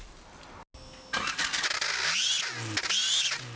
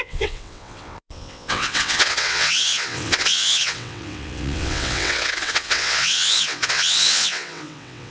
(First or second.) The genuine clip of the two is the first